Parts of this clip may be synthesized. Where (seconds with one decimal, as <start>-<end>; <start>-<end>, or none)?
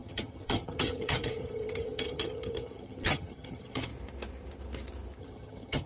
0.0-3.9; 5.2-5.9